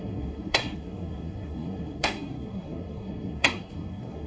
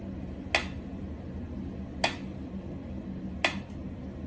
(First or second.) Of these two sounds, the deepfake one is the first